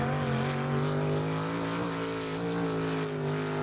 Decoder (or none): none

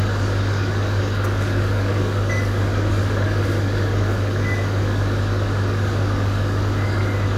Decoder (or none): codec, DAC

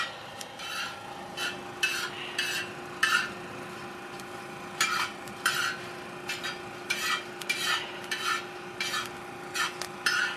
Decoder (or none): vocoder, BigVGAN v2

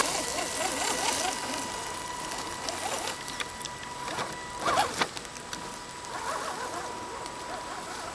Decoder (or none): none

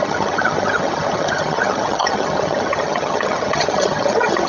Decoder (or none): vocoder, HiFi-GAN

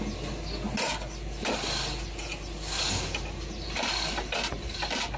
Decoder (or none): none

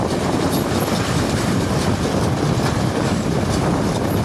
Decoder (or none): vocoder, BigVGAN v2